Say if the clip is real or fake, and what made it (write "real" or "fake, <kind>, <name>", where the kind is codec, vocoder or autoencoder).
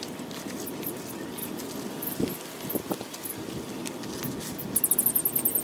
real